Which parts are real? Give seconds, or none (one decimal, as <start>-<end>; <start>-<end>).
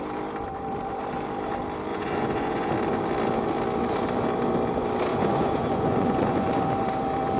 0.0-1.9; 2.7-5.1; 6.5-7.4